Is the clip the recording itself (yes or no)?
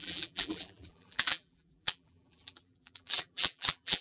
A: no